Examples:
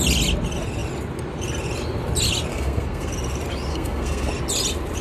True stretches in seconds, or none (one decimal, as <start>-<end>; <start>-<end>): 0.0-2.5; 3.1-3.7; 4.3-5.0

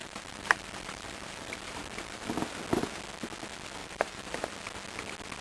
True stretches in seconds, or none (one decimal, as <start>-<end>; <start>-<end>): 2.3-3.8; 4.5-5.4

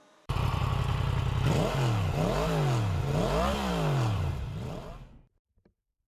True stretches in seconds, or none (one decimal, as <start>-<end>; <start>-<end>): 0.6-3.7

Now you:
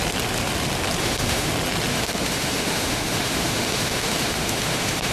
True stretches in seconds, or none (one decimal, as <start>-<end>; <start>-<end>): 0.0-1.0; 1.5-1.9

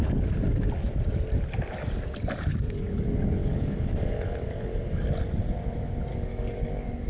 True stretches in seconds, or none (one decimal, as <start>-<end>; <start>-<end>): 0.0-2.5; 3.0-3.4; 5.1-6.1

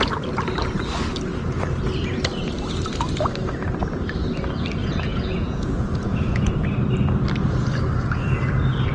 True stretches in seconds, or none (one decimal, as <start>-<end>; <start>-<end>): 0.0-4.8; 6.5-8.9

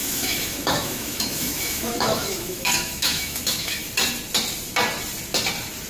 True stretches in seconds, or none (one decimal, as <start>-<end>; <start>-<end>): 3.8-5.9